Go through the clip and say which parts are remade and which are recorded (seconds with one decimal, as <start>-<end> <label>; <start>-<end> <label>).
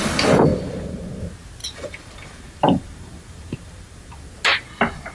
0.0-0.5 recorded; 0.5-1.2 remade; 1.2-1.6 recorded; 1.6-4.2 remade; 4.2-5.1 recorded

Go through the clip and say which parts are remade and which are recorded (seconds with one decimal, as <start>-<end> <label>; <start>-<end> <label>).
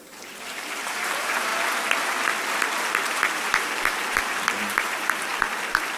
0.0-1.5 remade; 1.5-3.0 recorded; 3.0-5.3 remade; 5.3-6.0 recorded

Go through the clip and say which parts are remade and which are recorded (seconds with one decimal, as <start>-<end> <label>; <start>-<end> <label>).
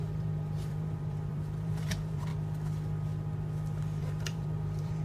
0.0-2.3 remade; 2.3-3.8 recorded; 3.8-5.0 remade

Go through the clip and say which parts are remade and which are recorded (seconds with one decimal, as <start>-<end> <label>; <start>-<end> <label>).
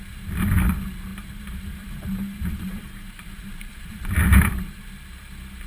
0.0-1.1 recorded; 1.1-4.5 remade; 4.5-5.7 recorded